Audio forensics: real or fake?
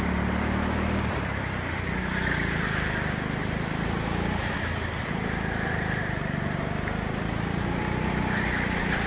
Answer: real